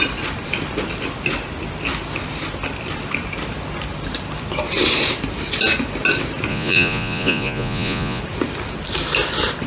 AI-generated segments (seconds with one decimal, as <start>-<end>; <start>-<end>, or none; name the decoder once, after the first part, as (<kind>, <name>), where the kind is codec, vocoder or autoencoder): 6.5-8.2 (vocoder, Vocos)